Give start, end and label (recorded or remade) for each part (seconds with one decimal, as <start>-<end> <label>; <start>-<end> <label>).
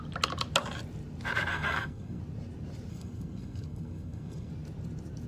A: 0.0-1.5 recorded; 1.5-2.2 remade; 2.2-2.9 recorded; 2.9-4.5 remade; 4.5-5.3 recorded